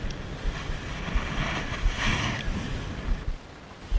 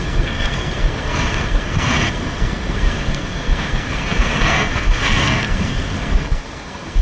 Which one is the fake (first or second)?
second